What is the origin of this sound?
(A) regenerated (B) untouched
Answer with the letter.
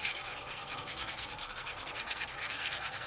A